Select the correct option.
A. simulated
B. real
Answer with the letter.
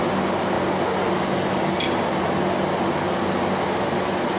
B